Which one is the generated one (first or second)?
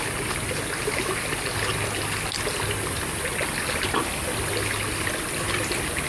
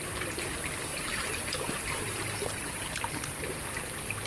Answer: second